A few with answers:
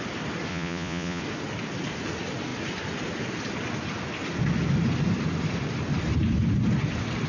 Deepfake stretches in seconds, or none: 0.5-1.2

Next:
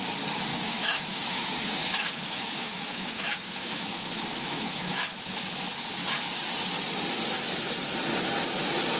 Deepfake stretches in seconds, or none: 0.5-5.4

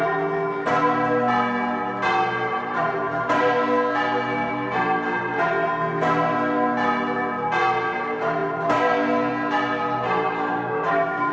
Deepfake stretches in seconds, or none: 10.5-11.3

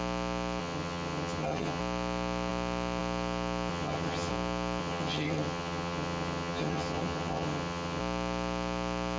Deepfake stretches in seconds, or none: 0.6-1.8; 3.7-4.3; 4.8-8.0

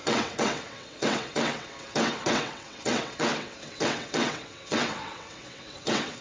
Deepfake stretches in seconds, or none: 0.0-6.2